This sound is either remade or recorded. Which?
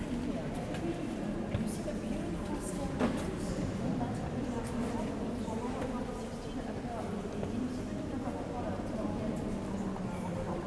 recorded